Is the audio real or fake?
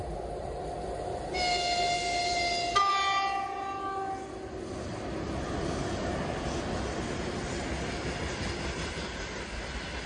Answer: real